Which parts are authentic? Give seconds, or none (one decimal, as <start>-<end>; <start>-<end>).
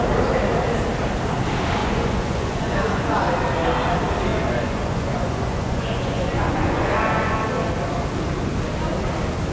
0.0-1.8; 3.2-4.3; 7.4-9.5